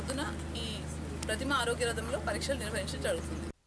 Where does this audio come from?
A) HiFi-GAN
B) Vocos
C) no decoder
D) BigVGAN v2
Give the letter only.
C